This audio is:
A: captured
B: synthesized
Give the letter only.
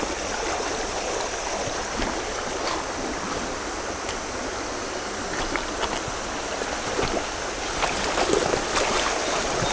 A